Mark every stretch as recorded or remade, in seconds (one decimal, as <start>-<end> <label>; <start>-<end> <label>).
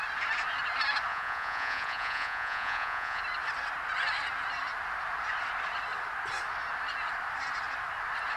0.0-1.1 recorded; 1.1-3.2 remade; 3.2-8.4 recorded